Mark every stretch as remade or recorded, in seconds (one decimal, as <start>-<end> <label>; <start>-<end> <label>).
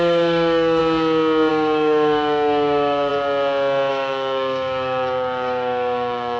0.0-0.8 remade; 0.8-1.5 recorded; 1.5-3.1 remade; 3.1-3.9 recorded; 3.9-6.4 remade